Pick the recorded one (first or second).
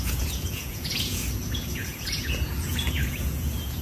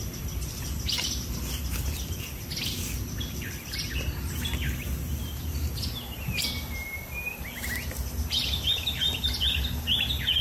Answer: second